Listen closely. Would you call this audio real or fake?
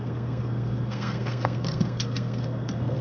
fake